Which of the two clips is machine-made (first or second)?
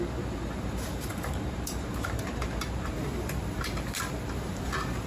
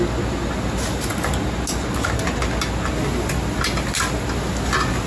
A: first